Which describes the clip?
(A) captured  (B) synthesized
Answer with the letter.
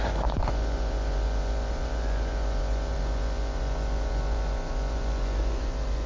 B